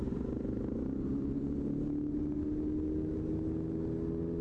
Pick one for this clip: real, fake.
real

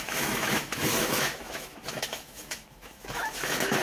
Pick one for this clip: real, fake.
fake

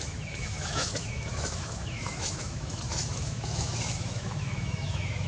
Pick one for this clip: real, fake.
fake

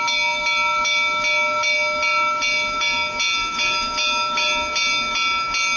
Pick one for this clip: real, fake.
real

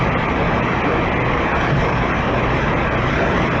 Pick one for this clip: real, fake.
real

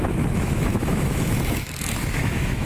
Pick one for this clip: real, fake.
fake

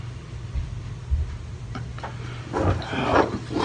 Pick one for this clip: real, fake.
real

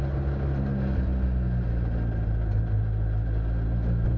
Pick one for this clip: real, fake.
real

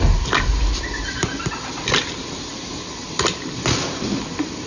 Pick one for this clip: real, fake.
real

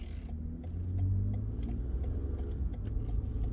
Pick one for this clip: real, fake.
real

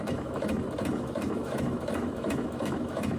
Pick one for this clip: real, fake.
fake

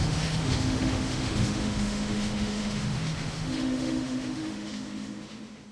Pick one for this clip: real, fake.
fake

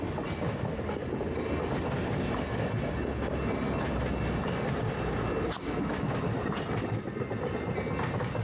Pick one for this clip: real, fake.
real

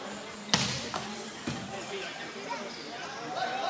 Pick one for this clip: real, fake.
real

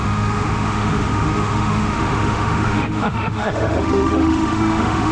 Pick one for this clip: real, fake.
fake